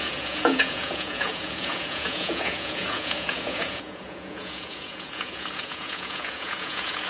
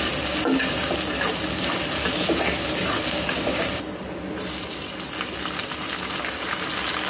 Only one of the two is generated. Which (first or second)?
first